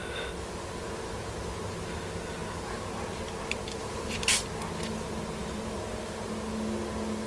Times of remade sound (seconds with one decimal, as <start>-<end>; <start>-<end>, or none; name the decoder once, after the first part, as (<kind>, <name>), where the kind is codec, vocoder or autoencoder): 3.8-4.3 (vocoder, BigVGAN v2)